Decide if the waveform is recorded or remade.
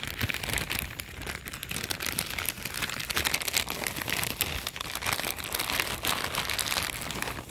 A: recorded